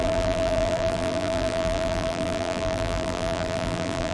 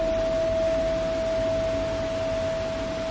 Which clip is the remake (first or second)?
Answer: first